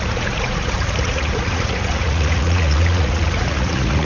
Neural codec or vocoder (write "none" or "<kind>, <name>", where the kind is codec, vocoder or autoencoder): vocoder, Vocos